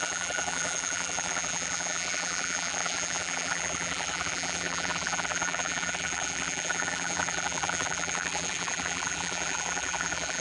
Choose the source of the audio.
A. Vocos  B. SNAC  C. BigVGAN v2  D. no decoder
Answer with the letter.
C